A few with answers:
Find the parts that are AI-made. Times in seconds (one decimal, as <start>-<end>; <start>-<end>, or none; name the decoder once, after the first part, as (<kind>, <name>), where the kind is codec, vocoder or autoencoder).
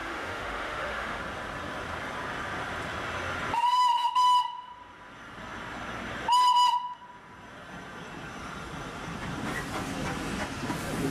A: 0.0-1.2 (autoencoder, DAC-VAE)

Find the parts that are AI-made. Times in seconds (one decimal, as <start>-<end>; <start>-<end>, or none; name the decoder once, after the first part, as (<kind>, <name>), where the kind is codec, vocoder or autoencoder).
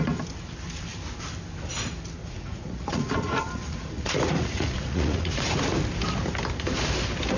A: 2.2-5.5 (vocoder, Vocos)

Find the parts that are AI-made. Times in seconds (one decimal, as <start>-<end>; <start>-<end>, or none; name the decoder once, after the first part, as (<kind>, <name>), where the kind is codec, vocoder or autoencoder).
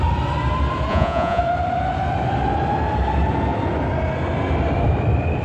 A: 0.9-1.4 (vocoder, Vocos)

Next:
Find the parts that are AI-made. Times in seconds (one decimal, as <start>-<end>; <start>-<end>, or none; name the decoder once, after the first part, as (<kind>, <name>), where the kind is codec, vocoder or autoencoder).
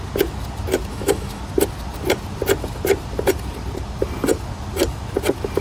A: 0.9-1.4 (autoencoder, DAC-VAE)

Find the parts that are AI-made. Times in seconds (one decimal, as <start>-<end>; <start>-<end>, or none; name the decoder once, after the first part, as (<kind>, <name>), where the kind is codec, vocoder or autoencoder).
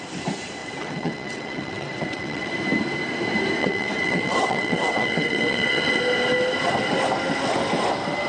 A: 0.6-2.5 (vocoder, WaveNeXt); 3.6-6.0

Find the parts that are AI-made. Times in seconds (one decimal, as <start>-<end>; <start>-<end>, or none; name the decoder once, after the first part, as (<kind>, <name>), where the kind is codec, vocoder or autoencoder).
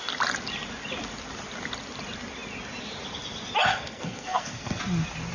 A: 3.7-4.8 (codec, SNAC)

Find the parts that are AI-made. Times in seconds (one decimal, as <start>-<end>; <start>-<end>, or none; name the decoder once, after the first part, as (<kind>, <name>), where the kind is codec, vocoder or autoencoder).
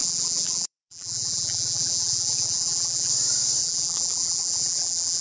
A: 0.0-3.1 (vocoder, BigVGAN v2); 3.6-5.2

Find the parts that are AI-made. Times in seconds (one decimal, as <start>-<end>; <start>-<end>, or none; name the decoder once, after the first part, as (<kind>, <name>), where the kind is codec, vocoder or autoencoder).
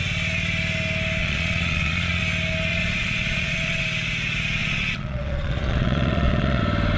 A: 1.2-2.2 (vocoder, Vocos); 2.7-3.8; 4.6-6.6